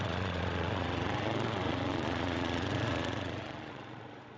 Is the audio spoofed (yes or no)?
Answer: yes